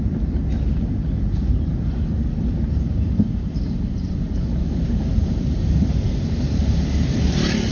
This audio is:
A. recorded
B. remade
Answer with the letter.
B